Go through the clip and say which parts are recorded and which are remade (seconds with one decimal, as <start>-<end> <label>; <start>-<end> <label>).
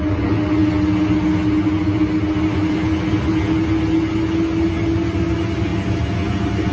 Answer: 0.0-6.7 recorded